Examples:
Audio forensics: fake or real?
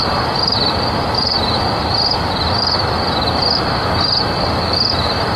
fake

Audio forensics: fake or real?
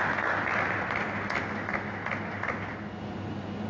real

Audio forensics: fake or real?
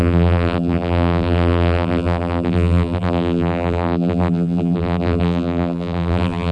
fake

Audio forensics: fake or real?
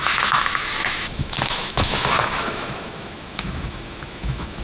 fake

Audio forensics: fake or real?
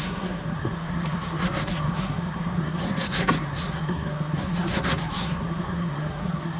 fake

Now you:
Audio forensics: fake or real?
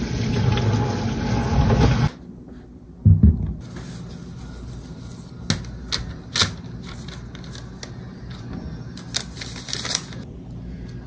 real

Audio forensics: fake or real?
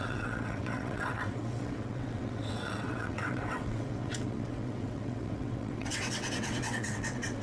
fake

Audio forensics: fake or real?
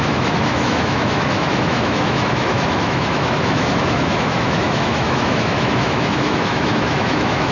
fake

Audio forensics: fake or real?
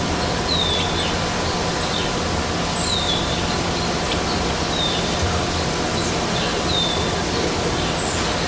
real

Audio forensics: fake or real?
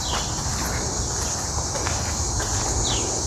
real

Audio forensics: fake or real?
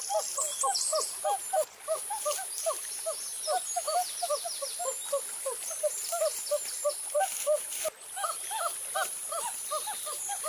real